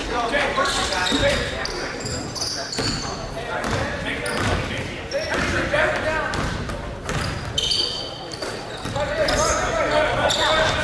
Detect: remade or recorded remade